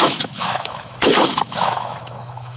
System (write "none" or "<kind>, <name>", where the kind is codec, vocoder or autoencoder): autoencoder, DAC-VAE